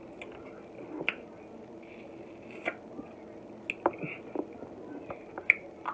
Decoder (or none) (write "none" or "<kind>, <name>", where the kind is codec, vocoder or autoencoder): none